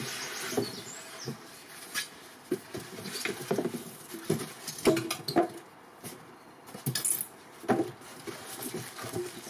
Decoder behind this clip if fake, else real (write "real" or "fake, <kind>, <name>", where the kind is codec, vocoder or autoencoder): real